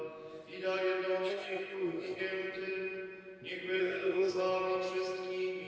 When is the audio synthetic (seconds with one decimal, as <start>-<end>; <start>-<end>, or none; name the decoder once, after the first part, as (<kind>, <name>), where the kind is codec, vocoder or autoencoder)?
1.3-2.2 (codec, ZipCodec); 3.8-4.4